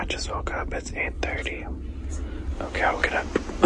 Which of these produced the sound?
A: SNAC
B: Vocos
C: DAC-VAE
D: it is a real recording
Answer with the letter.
D